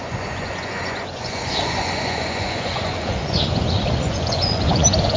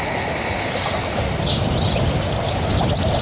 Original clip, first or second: second